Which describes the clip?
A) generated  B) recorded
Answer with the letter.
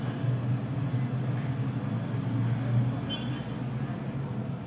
B